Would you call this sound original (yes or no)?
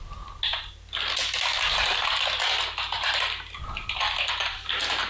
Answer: yes